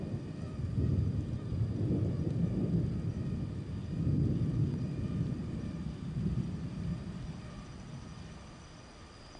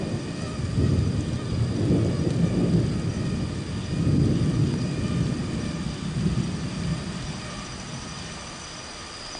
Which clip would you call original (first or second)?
second